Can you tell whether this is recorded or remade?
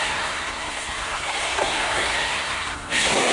remade